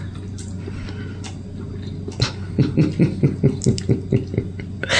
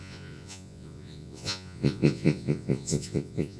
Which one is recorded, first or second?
first